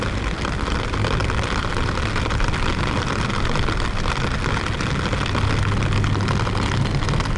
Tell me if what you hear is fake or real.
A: real